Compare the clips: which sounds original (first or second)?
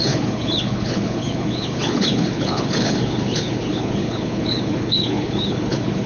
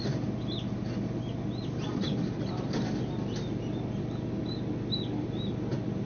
second